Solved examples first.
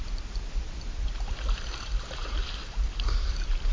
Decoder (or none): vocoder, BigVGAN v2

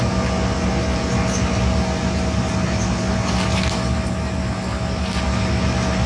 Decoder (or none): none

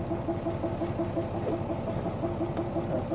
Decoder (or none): none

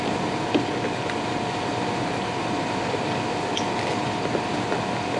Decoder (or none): none